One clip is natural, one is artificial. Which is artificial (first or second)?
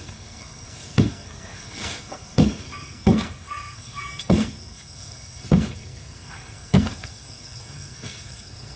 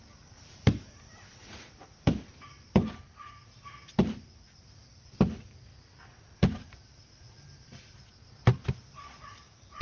first